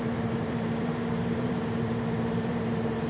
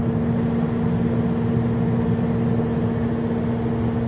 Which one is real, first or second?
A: second